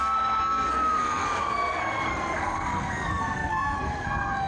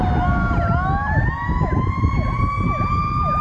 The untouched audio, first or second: second